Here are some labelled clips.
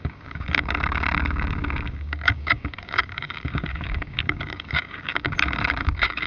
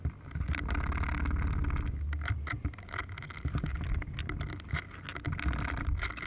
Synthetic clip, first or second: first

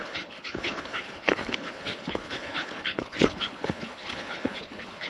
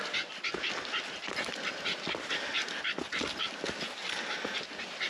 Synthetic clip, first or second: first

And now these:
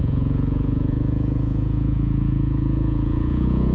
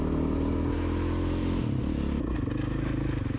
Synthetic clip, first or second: first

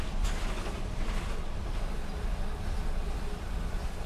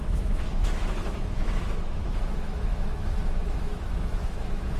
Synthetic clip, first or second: second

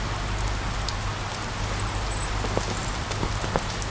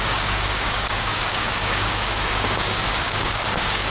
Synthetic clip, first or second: second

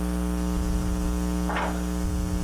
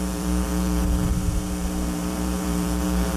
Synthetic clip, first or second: second